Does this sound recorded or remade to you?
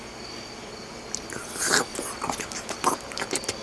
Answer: recorded